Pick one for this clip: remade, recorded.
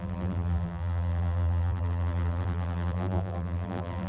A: remade